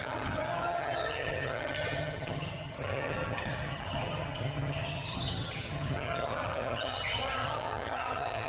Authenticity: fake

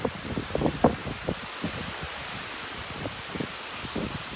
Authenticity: real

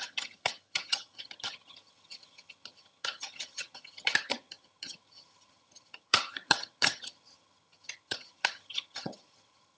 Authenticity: fake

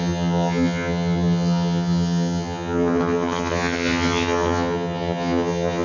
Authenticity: fake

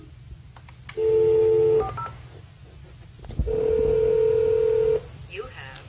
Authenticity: real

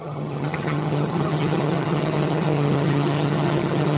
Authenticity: fake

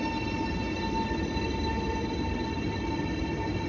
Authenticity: real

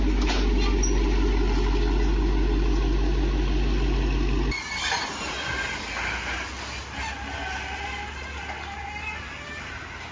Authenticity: real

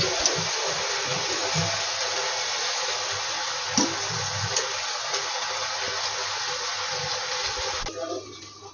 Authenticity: real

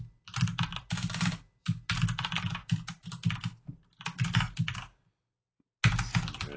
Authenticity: real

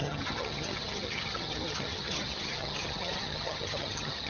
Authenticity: fake